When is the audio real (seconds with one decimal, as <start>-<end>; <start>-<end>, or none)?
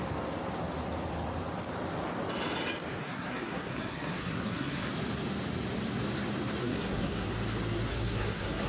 0.0-3.0; 4.9-6.6; 7.3-7.9